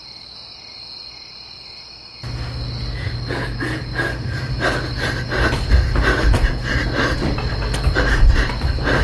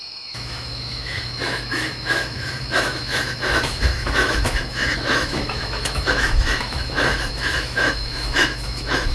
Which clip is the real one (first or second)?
first